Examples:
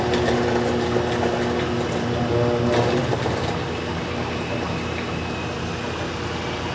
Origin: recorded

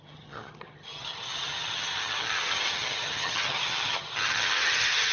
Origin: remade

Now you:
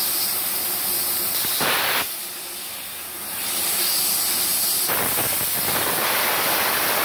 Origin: recorded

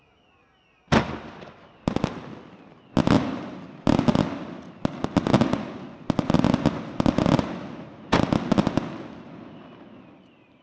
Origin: recorded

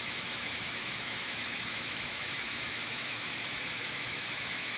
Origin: remade